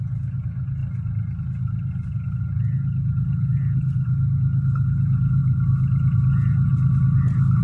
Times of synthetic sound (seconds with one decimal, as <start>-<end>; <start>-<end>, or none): 0.0-0.8; 2.1-5.4; 6.3-6.7